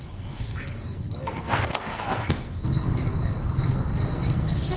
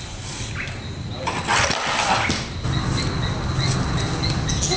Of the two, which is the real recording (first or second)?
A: second